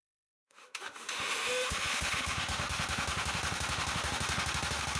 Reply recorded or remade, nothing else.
remade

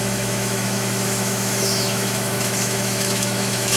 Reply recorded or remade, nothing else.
remade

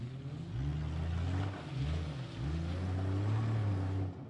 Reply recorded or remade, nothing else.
recorded